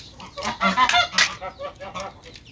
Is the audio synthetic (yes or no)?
no